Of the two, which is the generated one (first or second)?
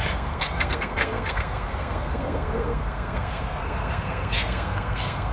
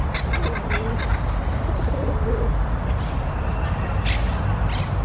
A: first